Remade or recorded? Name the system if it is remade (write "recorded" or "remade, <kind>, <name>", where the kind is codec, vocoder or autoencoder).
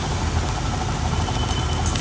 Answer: recorded